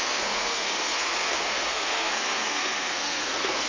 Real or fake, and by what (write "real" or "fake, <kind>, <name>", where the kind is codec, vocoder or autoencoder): fake, codec, SNAC